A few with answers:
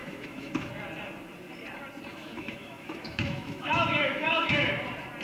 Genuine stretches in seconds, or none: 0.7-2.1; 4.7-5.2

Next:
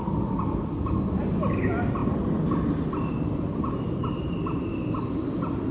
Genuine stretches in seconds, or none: 0.0-5.7